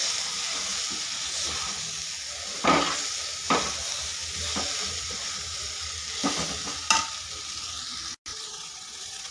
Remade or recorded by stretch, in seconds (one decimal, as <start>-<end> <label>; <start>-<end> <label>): 0.0-8.3 recorded; 8.3-9.3 remade